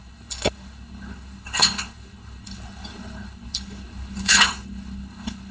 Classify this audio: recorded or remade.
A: remade